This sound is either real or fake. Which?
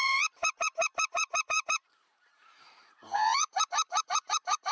fake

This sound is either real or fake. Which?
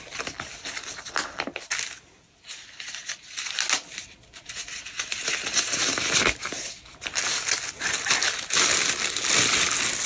real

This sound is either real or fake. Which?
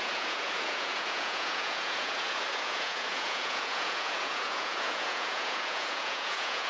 fake